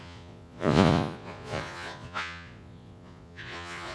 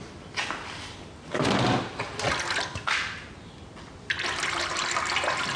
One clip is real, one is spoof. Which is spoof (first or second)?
first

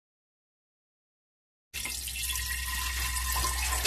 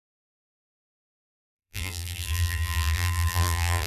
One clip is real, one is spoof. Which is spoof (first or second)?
second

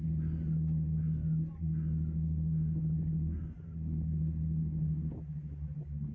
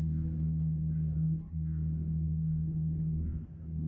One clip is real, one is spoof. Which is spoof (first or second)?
second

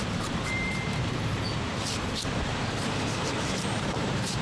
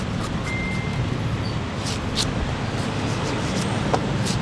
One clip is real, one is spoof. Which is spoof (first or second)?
first